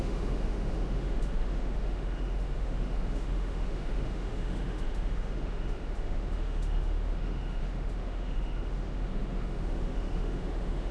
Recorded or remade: remade